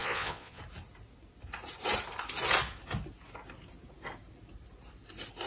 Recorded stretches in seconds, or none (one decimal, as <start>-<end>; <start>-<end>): 0.6-5.5